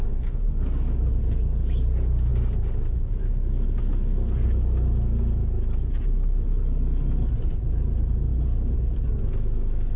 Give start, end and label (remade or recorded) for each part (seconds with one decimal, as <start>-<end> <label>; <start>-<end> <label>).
0.0-10.0 recorded